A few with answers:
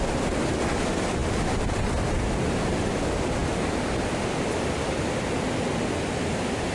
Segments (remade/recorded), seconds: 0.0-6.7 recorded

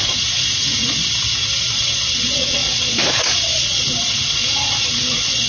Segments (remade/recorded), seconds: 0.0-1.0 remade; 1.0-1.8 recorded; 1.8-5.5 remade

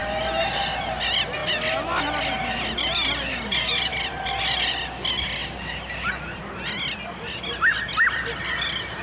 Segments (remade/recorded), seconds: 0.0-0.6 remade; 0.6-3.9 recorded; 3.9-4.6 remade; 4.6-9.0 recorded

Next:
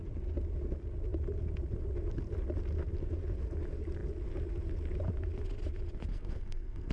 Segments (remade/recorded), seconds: 0.0-6.1 recorded; 6.1-6.9 remade

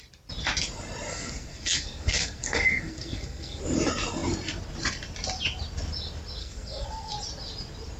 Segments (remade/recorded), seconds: 0.0-1.1 recorded; 1.1-3.6 remade; 3.6-6.4 recorded; 6.4-7.1 remade; 7.1-8.0 recorded